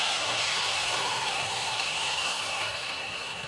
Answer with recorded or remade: remade